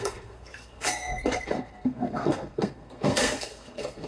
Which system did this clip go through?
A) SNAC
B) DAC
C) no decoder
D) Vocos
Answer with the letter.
A